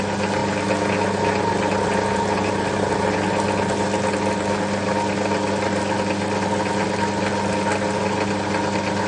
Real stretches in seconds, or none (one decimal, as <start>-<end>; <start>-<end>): 0.0-9.1